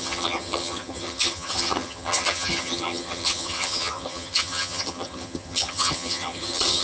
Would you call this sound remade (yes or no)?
yes